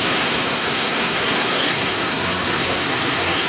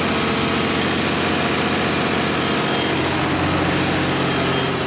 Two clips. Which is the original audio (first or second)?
second